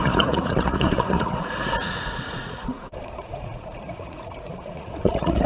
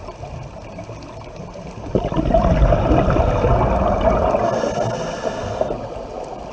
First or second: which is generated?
first